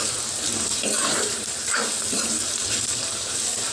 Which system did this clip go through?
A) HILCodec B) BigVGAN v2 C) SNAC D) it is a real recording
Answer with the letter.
B